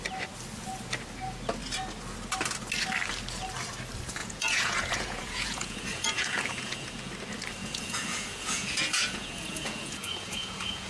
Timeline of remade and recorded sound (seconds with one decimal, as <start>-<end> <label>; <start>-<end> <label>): 0.0-4.2 recorded; 4.2-7.1 remade; 7.1-7.6 recorded; 7.6-10.9 remade